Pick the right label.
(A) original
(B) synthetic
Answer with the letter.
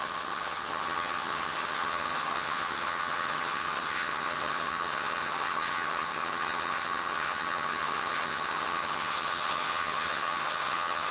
B